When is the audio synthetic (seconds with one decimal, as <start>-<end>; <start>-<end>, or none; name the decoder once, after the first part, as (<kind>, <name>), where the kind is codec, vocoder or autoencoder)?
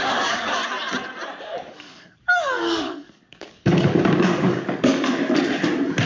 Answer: 0.0-0.6 (codec, DAC); 1.4-4.9